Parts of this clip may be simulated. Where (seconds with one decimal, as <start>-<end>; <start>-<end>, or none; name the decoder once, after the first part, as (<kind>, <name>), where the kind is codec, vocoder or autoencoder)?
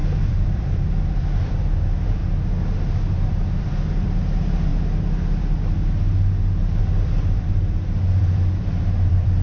0.0-2.2 (vocoder, BigVGAN v2); 3.0-4.7; 6.8-9.4